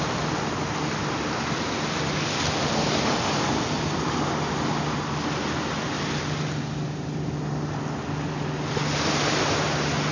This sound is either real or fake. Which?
real